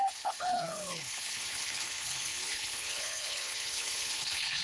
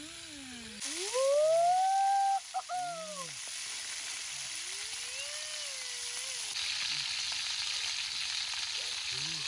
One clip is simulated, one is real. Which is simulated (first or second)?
first